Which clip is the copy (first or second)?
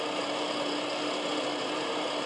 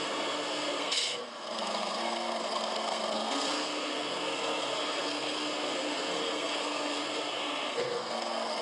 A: second